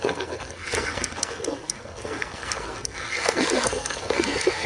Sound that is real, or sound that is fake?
fake